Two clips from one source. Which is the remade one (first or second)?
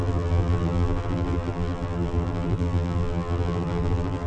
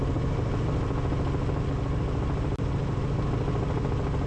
first